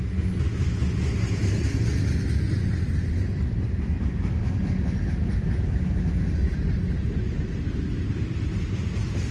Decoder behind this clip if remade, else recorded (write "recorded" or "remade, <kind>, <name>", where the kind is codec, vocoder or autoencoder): recorded